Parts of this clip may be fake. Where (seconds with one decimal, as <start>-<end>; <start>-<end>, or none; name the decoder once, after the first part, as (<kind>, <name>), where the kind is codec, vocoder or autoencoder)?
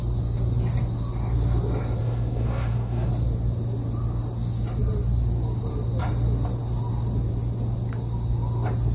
2.0-3.1 (codec, SNAC)